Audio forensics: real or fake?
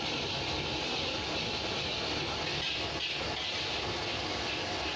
real